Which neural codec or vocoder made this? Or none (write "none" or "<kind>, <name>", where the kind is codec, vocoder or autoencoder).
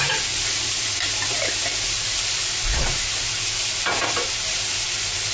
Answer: vocoder, BigVGAN v2